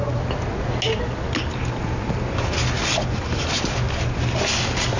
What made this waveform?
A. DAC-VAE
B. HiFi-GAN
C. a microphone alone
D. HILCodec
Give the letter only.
C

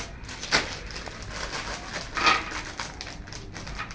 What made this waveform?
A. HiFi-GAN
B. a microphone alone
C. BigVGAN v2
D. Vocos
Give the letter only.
B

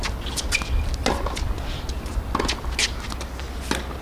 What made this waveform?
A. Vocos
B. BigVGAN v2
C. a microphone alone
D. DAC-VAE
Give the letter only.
C